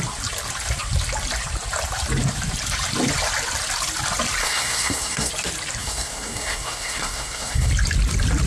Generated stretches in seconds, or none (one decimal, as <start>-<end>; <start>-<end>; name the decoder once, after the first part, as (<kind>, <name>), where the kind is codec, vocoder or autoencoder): 4.4-5.3 (codec, SNAC); 5.8-7.7